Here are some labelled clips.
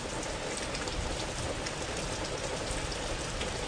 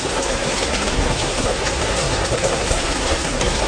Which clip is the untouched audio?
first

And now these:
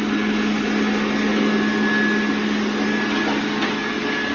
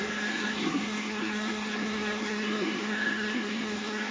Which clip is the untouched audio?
first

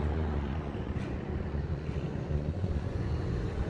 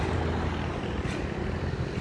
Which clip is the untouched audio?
second